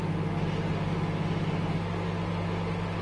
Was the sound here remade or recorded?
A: recorded